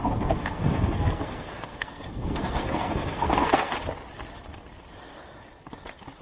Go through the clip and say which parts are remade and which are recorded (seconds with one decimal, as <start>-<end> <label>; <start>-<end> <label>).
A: 0.0-3.7 remade; 3.7-6.2 recorded